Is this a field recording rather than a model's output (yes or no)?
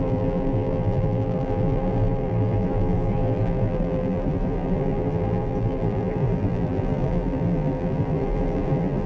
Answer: no